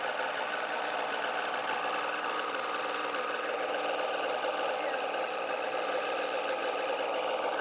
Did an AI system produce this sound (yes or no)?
yes